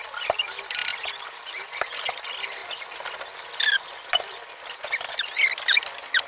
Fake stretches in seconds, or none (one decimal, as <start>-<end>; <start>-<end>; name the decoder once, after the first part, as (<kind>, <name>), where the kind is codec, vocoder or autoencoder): none